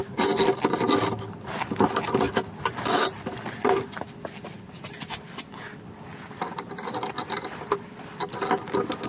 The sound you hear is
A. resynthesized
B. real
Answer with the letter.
B